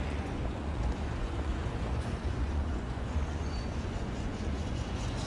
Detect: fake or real fake